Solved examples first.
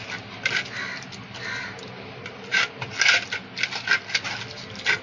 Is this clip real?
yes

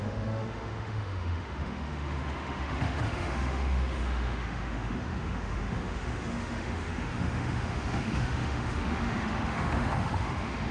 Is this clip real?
no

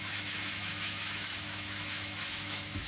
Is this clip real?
no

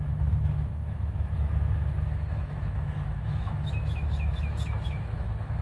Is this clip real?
no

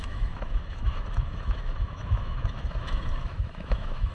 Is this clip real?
no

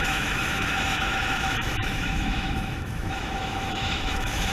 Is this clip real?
no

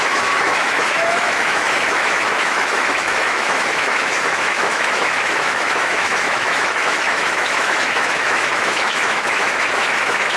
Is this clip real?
no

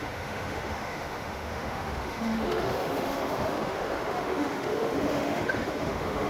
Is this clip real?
no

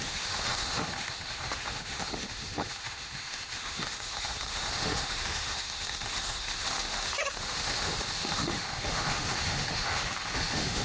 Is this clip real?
no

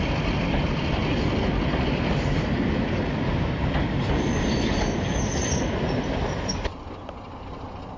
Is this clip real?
yes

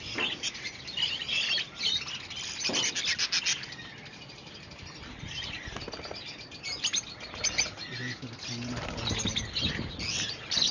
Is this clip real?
yes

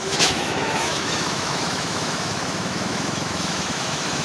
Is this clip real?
no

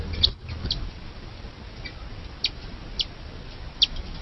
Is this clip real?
yes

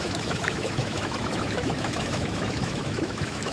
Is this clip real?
no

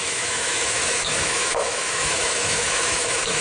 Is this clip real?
no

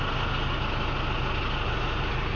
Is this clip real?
yes